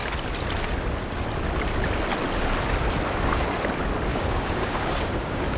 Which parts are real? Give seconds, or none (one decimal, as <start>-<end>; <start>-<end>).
0.0-4.1